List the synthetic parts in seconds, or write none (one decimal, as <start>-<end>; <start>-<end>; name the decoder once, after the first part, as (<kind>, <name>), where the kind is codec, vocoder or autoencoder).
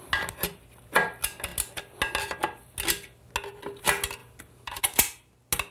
4.2-4.8 (vocoder, BigVGAN v2)